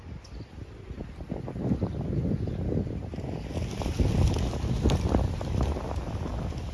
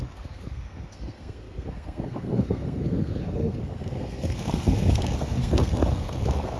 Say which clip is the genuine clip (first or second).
first